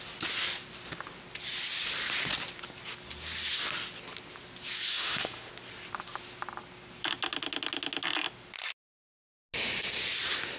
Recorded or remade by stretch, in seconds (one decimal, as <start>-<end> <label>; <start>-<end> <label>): 0.0-4.9 recorded; 4.9-5.5 remade; 5.5-10.6 recorded